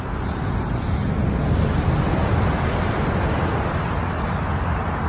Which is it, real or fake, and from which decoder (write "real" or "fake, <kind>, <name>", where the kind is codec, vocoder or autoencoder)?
real